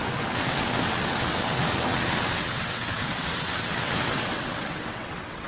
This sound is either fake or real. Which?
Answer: fake